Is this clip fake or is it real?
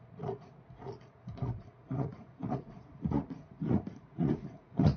fake